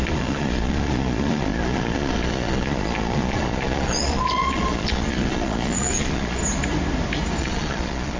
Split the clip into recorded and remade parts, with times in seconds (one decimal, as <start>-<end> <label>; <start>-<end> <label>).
0.0-6.4 remade; 6.4-7.4 recorded; 7.4-8.2 remade